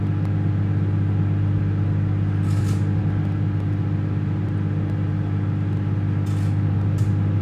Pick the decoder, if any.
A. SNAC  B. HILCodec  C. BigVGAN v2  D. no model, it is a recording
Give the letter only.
D